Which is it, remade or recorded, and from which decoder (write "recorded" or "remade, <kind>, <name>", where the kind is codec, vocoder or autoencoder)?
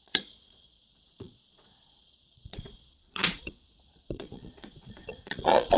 remade, vocoder, Vocos